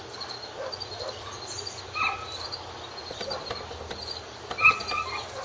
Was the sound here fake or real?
real